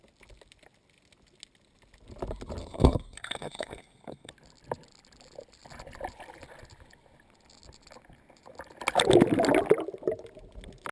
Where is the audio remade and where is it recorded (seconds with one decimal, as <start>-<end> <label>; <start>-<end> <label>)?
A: 0.0-2.6 recorded; 2.6-4.3 remade; 4.3-10.9 recorded